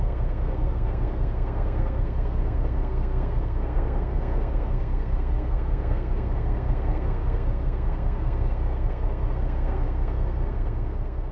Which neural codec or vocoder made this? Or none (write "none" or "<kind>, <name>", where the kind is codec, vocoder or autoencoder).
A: codec, SNAC